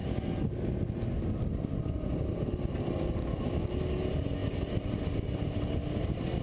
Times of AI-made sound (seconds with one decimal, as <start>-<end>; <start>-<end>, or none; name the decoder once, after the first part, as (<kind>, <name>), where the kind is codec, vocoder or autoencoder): none